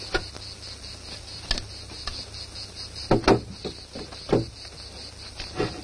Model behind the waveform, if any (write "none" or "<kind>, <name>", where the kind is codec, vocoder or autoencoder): none